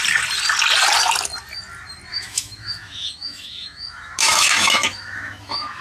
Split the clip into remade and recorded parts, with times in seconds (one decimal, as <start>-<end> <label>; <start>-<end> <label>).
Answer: 0.0-2.1 recorded; 2.1-5.8 remade

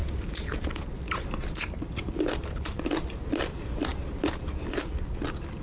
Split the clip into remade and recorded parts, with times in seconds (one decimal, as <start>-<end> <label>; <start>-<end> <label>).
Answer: 0.0-3.4 remade; 3.4-3.9 recorded; 3.9-4.9 remade; 4.9-5.6 recorded

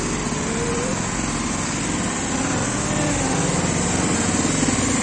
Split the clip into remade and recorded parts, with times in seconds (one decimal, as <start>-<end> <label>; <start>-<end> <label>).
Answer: 0.0-5.0 recorded